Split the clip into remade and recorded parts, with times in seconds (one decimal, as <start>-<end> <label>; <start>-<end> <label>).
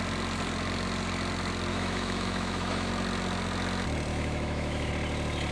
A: 0.0-1.7 recorded; 1.7-2.9 remade; 2.9-4.1 recorded; 4.1-4.9 remade; 4.9-5.5 recorded